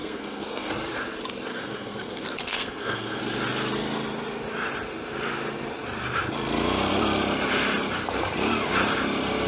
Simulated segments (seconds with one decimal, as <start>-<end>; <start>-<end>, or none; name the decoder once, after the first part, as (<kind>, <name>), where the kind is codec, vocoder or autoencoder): 0.0-0.7 (codec, SNAC); 1.5-3.2